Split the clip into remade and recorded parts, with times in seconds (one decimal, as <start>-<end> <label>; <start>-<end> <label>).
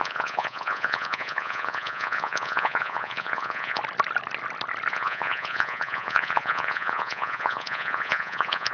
0.0-3.8 remade; 3.8-4.9 recorded; 4.9-8.7 remade